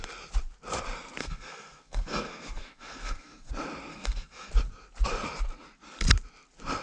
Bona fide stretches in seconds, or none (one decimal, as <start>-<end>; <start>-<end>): 0.0-1.2; 3.5-3.9; 4.5-6.8